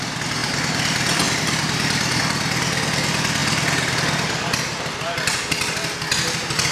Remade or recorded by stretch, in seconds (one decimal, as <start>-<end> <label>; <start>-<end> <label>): 0.0-0.4 recorded; 0.4-2.2 remade; 2.2-3.4 recorded; 3.4-5.7 remade; 5.7-6.7 recorded